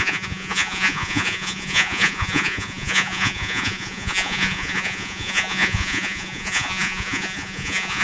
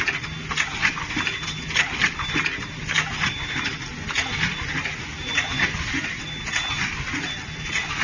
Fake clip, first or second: first